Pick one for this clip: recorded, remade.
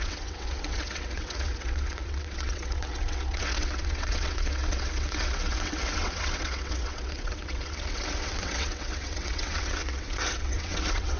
remade